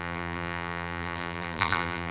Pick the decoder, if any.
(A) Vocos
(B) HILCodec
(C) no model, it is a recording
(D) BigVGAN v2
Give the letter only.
D